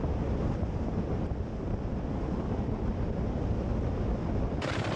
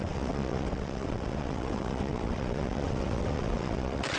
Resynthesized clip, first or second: second